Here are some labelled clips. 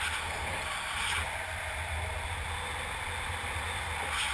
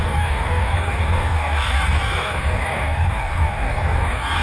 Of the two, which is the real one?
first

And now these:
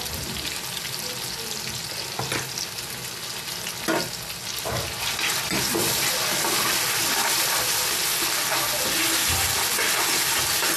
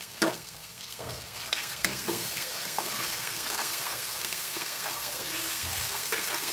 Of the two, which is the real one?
first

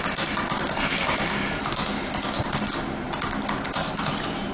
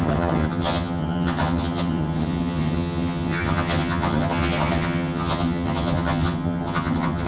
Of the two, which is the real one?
first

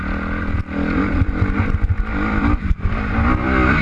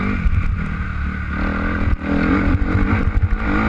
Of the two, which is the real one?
second